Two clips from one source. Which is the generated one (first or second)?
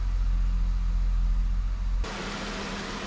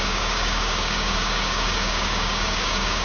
second